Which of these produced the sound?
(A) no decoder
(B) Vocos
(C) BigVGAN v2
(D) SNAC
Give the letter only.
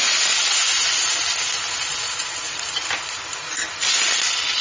A